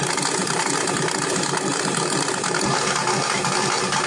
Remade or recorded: recorded